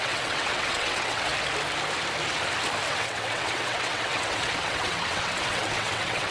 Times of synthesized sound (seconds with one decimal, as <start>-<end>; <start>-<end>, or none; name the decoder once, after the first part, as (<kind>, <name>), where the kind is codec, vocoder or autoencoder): 0.0-1.3 (vocoder, WaveNeXt); 2.9-6.3